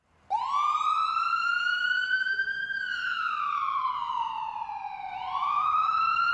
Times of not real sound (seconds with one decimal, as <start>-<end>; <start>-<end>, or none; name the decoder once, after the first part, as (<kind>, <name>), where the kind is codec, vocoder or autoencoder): 1.3-3.9 (autoencoder, DAC-VAE); 5.4-6.3